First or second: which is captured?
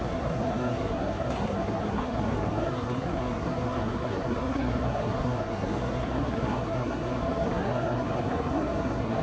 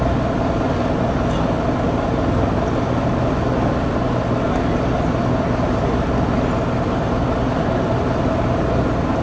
second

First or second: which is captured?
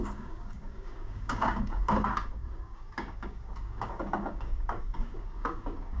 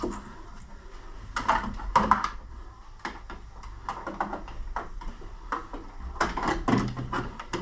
second